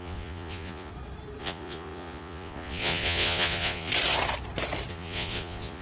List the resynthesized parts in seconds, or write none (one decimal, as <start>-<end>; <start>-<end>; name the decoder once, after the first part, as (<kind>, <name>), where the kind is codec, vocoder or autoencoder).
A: 0.0-0.9 (vocoder, Vocos); 1.4-3.9; 4.9-5.8